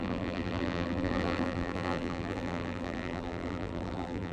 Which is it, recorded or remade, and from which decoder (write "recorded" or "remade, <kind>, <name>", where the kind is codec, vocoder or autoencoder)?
remade, vocoder, BigVGAN v2